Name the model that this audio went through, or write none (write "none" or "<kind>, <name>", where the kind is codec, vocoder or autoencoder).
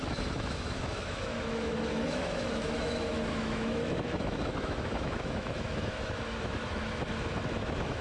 autoencoder, DAC-VAE